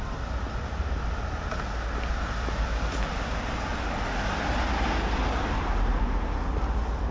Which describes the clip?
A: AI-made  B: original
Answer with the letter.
B